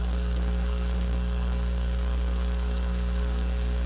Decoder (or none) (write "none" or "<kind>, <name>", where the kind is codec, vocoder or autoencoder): codec, SNAC